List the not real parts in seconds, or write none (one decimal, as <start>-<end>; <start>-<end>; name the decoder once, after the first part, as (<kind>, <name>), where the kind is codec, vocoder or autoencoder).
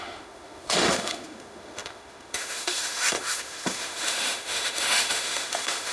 0.0-5.9 (autoencoder, DAC-VAE)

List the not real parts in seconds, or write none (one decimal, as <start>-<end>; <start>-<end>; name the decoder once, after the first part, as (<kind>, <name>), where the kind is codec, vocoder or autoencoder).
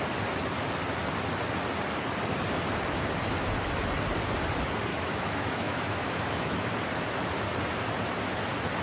4.9-6.7 (autoencoder, DAC-VAE)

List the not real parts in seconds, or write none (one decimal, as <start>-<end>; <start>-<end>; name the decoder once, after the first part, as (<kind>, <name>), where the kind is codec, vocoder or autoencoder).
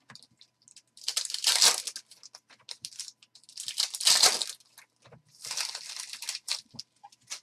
none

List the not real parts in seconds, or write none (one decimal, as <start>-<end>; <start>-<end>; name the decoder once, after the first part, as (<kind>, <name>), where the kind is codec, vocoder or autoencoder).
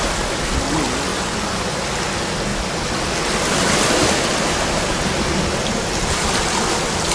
1.1-1.8 (vocoder, Vocos)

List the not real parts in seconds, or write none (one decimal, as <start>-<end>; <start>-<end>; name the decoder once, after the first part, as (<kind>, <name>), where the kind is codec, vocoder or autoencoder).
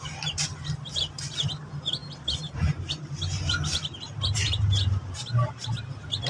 2.0-5.8 (vocoder, BigVGAN v2)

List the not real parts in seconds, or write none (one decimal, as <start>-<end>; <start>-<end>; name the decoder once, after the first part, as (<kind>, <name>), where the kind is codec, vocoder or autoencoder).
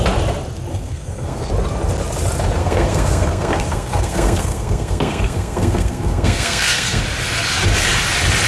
0.7-1.5 (codec, SNAC); 2.6-7.0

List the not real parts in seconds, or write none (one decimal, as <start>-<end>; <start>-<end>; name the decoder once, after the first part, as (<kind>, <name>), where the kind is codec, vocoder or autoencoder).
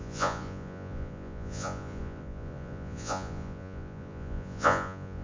0.0-5.2 (vocoder, Vocos)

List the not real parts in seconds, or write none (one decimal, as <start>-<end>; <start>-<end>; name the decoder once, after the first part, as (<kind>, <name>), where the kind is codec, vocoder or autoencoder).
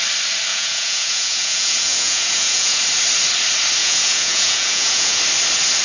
0.5-2.8 (vocoder, Vocos); 3.8-5.2